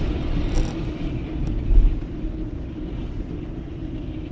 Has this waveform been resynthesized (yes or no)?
yes